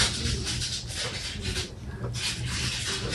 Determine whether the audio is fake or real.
real